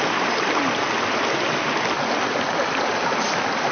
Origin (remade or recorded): recorded